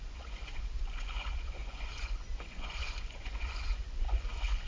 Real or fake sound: fake